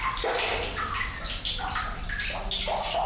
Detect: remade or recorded recorded